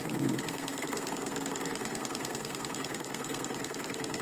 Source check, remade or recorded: remade